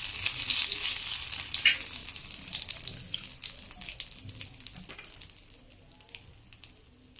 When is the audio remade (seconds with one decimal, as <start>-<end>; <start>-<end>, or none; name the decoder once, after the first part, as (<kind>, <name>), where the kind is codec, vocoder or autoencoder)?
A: none